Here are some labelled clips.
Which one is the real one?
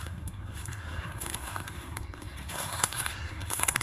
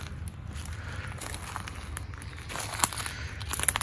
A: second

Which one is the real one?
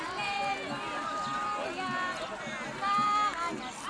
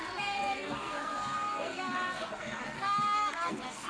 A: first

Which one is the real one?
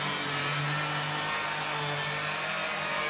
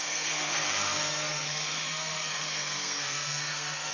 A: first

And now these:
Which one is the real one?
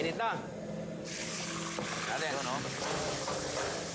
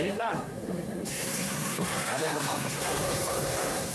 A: first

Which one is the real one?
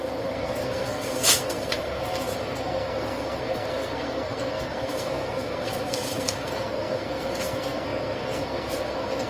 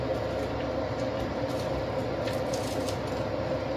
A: second